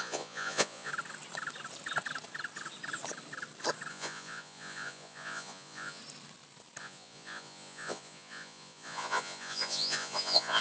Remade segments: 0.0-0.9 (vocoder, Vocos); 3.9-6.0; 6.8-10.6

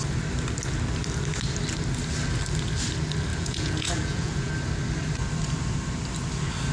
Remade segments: 3.3-4.5 (vocoder, Vocos)

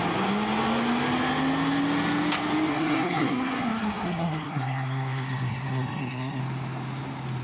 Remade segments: 2.7-6.4 (codec, SNAC)

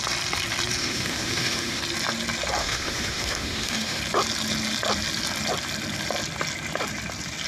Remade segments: 0.8-1.8 (autoencoder, DAC-VAE); 2.6-4.0

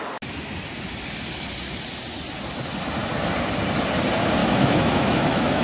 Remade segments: 4.4-5.6 (autoencoder, DAC-VAE)

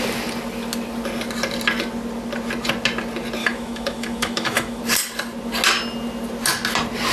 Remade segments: 3.4-4.8 (autoencoder, DAC-VAE)

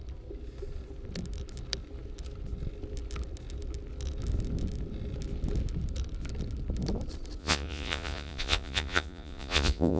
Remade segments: 7.4-10.0 (vocoder, Vocos)

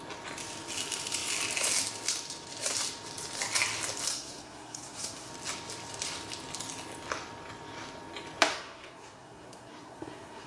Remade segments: 4.1-5.3 (codec, SNAC); 8.5-10.5